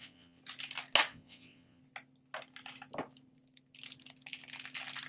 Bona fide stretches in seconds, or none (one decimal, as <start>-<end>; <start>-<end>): 0.4-1.1; 1.8-5.1